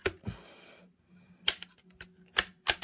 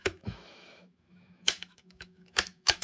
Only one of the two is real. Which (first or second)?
first